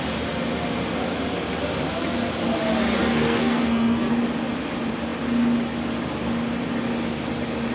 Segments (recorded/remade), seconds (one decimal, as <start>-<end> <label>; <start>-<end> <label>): 0.0-3.0 recorded; 3.0-4.1 remade; 4.1-7.7 recorded